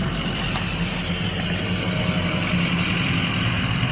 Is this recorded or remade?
recorded